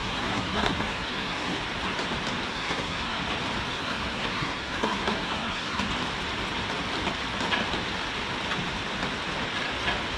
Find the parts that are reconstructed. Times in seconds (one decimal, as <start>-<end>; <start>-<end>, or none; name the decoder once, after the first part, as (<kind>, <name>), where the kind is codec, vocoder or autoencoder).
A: 0.0-1.6 (codec, SNAC); 2.5-3.2; 3.7-5.9